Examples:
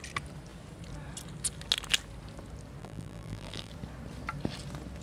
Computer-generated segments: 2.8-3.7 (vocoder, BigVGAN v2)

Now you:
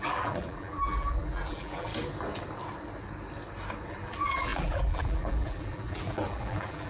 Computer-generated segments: 0.0-1.9 (vocoder, BigVGAN v2); 3.9-6.9

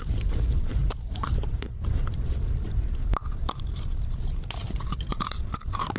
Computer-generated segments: 0.0-6.0 (vocoder, BigVGAN v2)

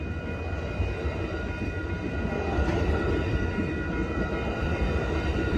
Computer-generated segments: 1.8-5.6 (vocoder, BigVGAN v2)

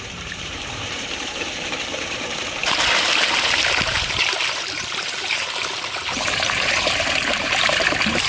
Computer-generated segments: 0.0-2.6 (vocoder, BigVGAN v2); 3.3-8.3

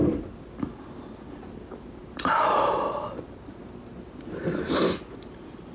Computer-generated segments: none

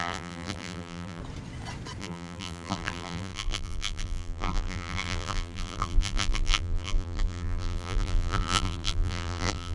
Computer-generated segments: 0.0-1.2 (vocoder, BigVGAN v2); 2.0-9.7